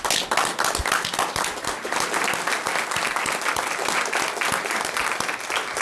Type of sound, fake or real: real